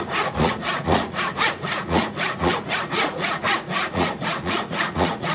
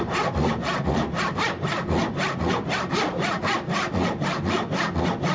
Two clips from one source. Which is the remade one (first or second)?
first